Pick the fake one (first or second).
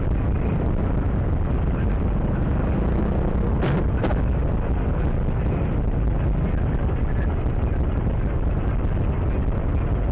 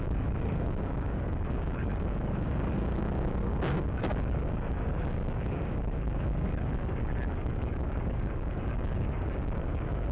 second